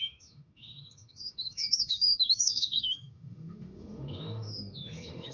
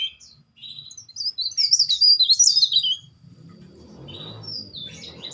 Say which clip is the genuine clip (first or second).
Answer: second